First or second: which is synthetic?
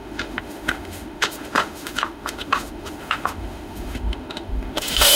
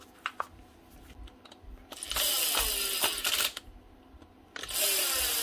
first